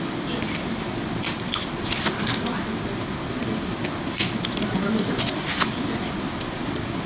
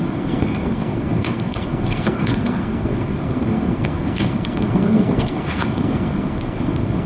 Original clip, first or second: first